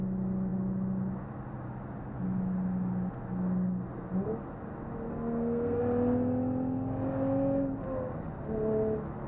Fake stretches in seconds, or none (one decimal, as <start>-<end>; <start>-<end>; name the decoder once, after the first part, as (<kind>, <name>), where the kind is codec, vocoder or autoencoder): 5.1-5.8 (codec, SNAC)